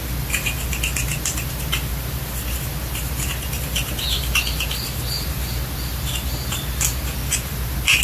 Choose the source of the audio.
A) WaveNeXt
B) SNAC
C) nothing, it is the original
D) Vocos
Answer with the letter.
C